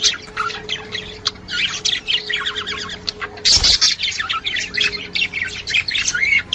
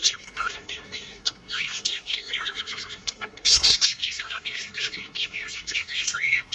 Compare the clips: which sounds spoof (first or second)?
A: second